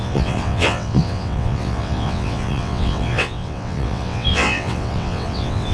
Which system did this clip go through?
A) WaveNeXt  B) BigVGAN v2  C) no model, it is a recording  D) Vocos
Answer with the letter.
A